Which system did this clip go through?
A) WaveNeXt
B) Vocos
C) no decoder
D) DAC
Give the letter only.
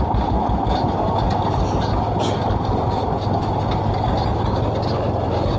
C